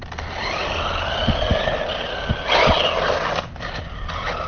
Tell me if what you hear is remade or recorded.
recorded